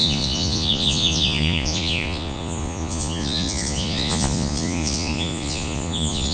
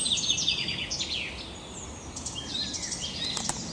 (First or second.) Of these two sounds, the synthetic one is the first